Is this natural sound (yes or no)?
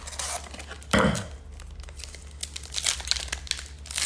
yes